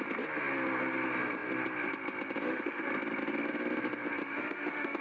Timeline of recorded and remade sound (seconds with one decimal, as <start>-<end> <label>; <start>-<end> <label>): 0.0-2.4 recorded; 2.4-2.9 remade; 2.9-4.2 recorded; 4.2-5.0 remade